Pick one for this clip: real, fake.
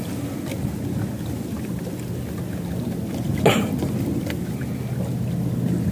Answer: real